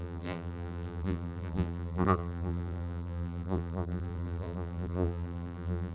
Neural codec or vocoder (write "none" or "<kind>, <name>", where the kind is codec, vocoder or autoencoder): vocoder, BigVGAN v2